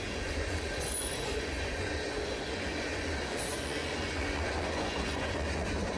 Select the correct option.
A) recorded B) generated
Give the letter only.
B